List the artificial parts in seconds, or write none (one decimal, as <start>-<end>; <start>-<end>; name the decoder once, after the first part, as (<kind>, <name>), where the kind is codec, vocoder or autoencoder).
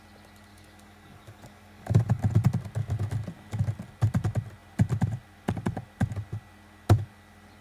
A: 0.5-2.2 (codec, DAC)